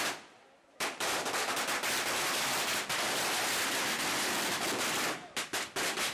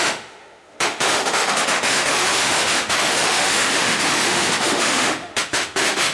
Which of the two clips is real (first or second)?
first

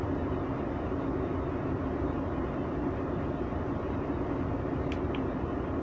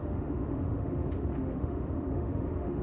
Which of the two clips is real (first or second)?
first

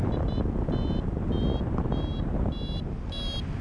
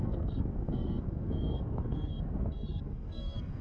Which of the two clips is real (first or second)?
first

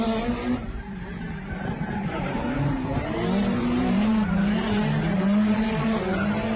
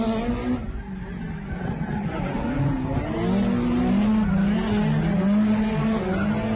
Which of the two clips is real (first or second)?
second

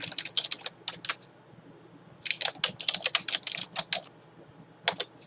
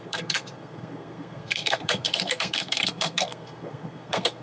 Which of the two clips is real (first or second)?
first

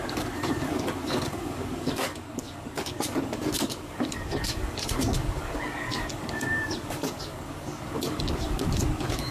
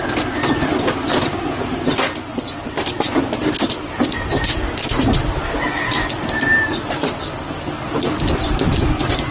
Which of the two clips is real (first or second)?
second